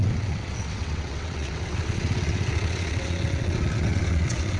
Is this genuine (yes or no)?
no